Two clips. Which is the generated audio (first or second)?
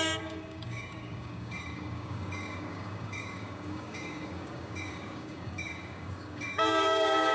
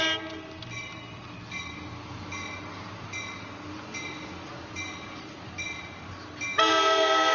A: first